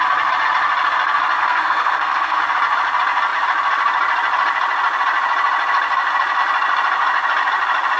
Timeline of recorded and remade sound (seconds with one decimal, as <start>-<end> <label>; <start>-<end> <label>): 0.0-1.4 recorded; 1.4-2.4 remade; 2.4-8.0 recorded